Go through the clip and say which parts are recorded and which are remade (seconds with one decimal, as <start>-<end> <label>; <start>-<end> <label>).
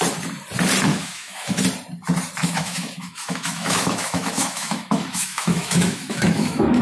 0.0-0.9 recorded; 0.9-1.6 remade; 1.6-2.4 recorded; 2.4-6.8 remade